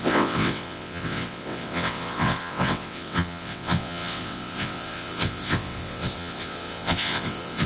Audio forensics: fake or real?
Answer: fake